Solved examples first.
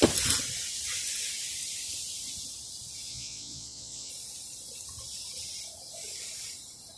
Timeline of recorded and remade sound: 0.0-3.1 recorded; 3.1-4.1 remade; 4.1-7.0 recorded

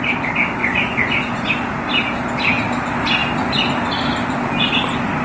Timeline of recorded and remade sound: 0.0-0.6 recorded; 0.6-1.5 remade; 1.5-5.2 recorded

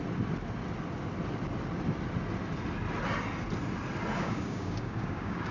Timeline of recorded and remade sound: 0.0-4.2 recorded; 4.2-5.5 remade

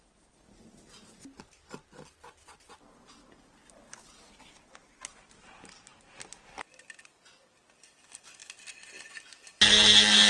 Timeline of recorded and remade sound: 0.0-10.3 recorded

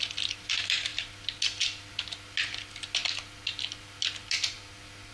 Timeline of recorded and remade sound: 0.0-5.1 recorded

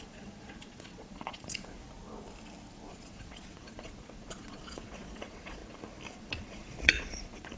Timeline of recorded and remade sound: 0.0-1.8 remade; 1.8-2.9 recorded; 2.9-5.6 remade; 5.6-6.1 recorded; 6.1-7.6 remade